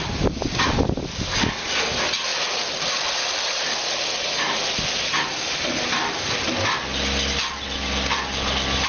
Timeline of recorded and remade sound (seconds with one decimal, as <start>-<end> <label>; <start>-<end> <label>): 0.0-8.9 recorded